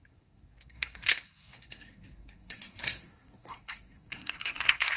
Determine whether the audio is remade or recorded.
remade